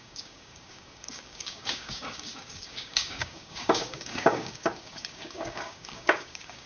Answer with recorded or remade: remade